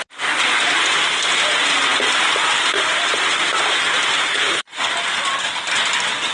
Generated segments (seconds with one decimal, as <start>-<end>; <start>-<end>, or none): 4.3-4.9